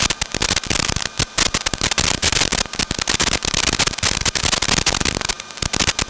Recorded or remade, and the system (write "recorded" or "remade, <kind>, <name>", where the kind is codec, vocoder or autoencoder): recorded